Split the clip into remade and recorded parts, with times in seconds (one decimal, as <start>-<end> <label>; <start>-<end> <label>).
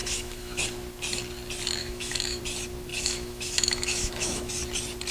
0.0-0.6 remade; 0.6-1.8 recorded; 1.8-2.4 remade; 2.4-2.9 recorded; 2.9-4.5 remade; 4.5-5.1 recorded